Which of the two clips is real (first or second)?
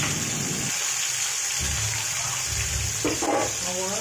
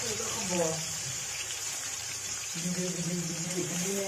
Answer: first